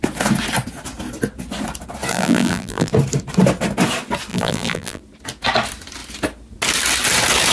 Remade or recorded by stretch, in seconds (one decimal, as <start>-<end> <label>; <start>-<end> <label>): 0.0-2.1 recorded; 2.1-2.9 remade; 2.9-4.3 recorded; 4.3-5.0 remade; 5.0-7.5 recorded